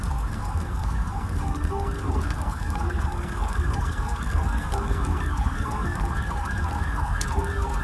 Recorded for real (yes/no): no